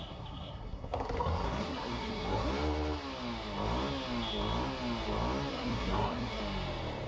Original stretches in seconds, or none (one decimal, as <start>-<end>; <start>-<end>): 2.5-5.5; 6.4-7.1